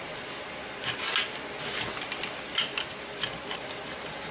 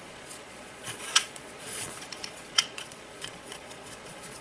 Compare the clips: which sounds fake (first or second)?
second